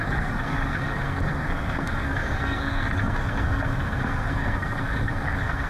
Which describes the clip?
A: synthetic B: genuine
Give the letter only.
A